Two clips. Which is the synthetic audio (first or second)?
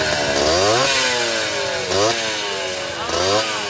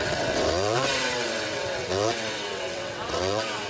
second